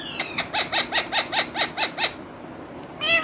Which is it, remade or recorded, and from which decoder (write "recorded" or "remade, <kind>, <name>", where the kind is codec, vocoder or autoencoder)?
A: recorded